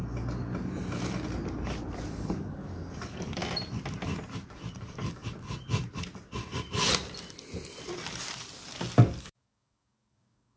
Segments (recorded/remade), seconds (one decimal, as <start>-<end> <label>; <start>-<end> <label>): 0.0-2.1 recorded; 2.1-3.4 remade; 3.4-4.7 recorded; 4.7-5.2 remade; 5.2-9.2 recorded; 9.2-10.6 remade

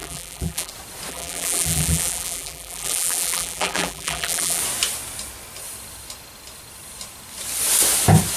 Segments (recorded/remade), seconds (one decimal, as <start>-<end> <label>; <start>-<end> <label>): 0.0-0.7 remade; 0.7-1.1 recorded; 1.1-4.6 remade; 4.6-8.4 recorded

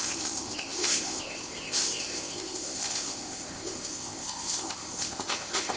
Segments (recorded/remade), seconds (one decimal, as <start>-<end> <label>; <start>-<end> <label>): 0.0-5.8 remade

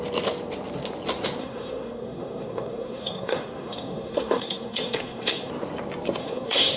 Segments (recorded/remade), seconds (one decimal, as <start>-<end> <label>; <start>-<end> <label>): 0.0-1.4 recorded; 1.4-5.5 remade; 5.5-6.2 recorded; 6.2-6.8 remade

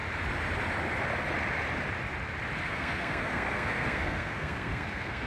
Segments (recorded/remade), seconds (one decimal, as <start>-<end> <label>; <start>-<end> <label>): 0.0-2.7 recorded; 2.7-5.3 remade

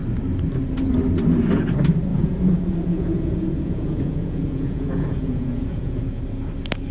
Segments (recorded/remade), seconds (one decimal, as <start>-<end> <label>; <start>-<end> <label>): 0.0-2.1 recorded; 2.1-6.2 remade; 6.2-6.9 recorded

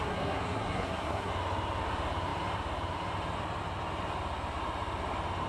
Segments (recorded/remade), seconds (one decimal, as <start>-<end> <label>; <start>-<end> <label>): 0.0-1.3 remade; 1.3-5.5 recorded

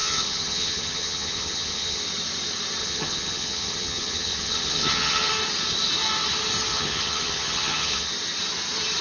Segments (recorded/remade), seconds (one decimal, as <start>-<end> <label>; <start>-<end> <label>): 0.0-2.0 remade; 2.0-2.8 recorded; 2.8-5.3 remade; 5.3-6.7 recorded; 6.7-8.1 remade; 8.1-9.0 recorded